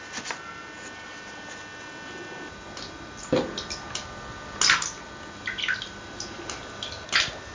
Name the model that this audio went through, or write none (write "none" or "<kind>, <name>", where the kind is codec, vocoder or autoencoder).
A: none